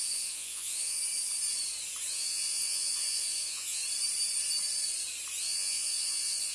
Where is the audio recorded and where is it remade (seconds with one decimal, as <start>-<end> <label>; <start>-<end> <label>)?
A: 0.0-1.0 remade; 1.0-2.1 recorded; 2.1-3.8 remade; 3.8-5.4 recorded; 5.4-6.5 remade